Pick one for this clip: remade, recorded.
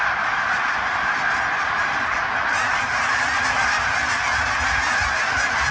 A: recorded